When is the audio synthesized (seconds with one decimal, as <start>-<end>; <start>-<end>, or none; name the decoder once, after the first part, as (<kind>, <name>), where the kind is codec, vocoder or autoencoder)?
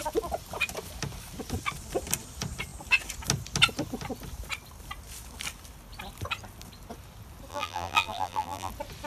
7.5-8.7 (vocoder, BigVGAN v2)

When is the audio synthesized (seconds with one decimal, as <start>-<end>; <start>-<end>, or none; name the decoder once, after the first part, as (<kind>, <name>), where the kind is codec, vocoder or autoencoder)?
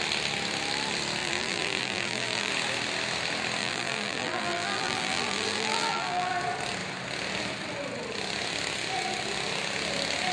1.2-2.5 (vocoder, BigVGAN v2); 3.6-6.3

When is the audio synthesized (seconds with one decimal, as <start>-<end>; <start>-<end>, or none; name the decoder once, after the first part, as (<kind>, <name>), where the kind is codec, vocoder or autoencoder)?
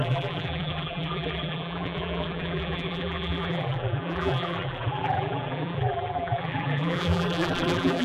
0.0-8.0 (vocoder, BigVGAN v2)